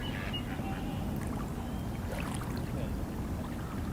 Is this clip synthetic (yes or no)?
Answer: no